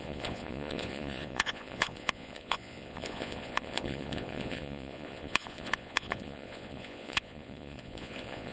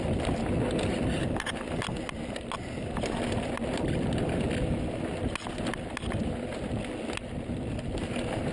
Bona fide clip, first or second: second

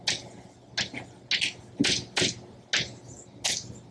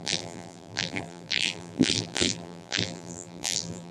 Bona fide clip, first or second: first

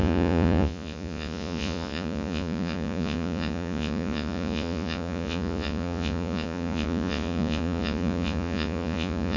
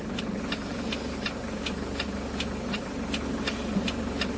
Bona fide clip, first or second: second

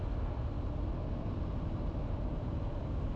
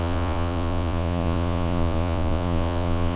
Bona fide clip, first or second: first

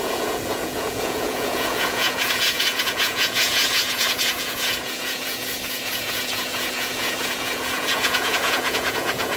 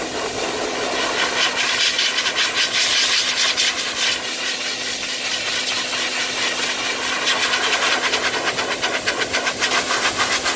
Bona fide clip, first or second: second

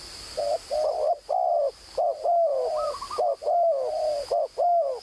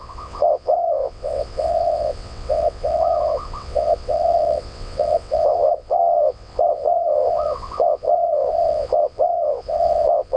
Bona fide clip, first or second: first